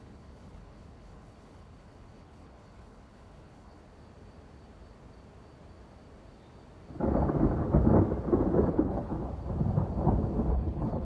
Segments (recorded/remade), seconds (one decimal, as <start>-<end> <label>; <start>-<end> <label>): 0.0-3.8 remade; 3.8-8.7 recorded; 8.7-9.1 remade; 9.1-10.5 recorded; 10.5-11.0 remade